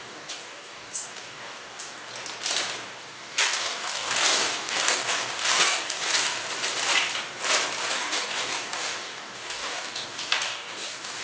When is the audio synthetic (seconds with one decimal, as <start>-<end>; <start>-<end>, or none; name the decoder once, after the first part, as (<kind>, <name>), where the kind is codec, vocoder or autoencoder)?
0.0-2.1 (codec, DAC); 2.9-6.4; 7.9-11.2